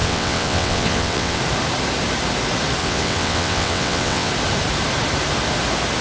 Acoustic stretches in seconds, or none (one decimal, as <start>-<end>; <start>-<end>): 1.4-2.8; 4.3-6.0